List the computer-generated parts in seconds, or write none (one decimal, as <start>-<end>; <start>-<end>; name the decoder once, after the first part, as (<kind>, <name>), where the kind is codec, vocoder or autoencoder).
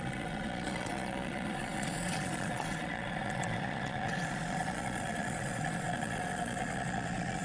0.0-7.4 (vocoder, Vocos)